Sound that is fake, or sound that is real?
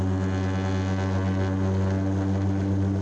real